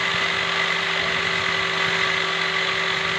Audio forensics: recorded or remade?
recorded